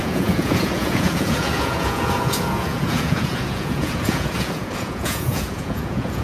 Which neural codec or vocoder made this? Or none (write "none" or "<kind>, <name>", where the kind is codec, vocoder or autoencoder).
vocoder, Vocos